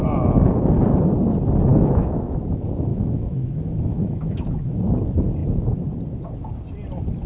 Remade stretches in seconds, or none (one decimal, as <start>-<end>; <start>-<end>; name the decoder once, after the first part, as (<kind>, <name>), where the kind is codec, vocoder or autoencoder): 1.7-2.4 (autoencoder, DAC-VAE); 2.9-4.8